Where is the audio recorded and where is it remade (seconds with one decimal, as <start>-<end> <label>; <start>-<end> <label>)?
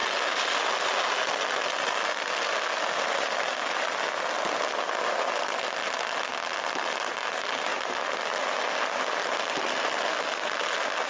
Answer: 0.0-2.3 recorded; 2.3-2.8 remade; 2.8-11.1 recorded